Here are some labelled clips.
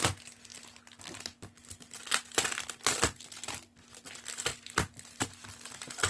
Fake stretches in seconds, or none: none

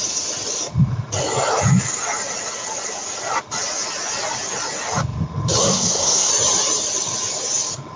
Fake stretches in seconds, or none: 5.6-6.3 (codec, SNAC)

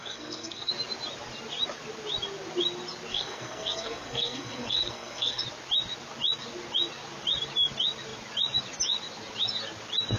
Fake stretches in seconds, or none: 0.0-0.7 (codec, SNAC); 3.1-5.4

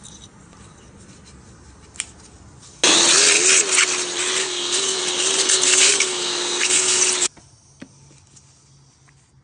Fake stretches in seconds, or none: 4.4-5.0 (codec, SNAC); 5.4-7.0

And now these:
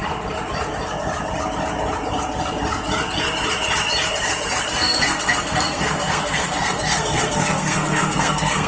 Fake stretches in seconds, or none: 4.7-8.7 (codec, SNAC)

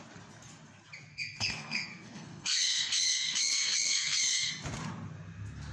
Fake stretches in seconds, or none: 1.1-4.5 (codec, SNAC)